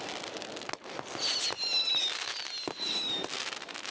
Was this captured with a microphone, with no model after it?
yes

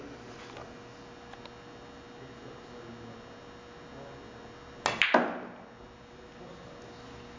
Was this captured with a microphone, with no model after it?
yes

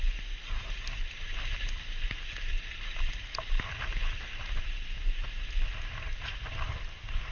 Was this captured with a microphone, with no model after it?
yes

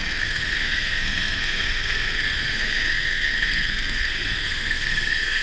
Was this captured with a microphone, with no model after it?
no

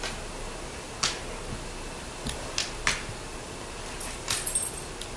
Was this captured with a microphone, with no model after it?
yes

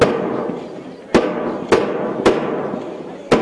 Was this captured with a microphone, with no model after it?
yes